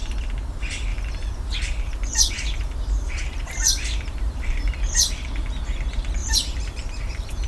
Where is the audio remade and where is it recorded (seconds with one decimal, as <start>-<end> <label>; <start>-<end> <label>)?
0.0-0.9 recorded; 0.9-4.7 remade; 4.7-6.2 recorded; 6.2-7.5 remade